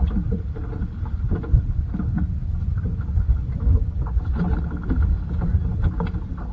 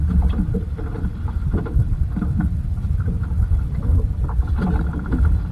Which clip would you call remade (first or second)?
second